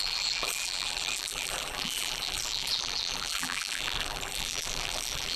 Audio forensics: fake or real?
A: fake